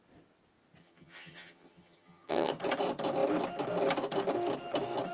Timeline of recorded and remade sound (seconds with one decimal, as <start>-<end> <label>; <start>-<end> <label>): 0.0-0.8 recorded; 0.8-2.5 remade; 2.5-5.1 recorded